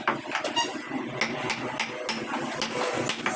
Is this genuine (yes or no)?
yes